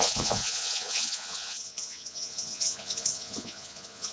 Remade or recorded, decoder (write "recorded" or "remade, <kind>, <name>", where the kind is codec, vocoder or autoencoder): remade, vocoder, Vocos